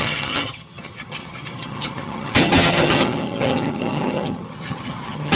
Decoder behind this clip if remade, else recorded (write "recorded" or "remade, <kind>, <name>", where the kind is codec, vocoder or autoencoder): remade, vocoder, HiFi-GAN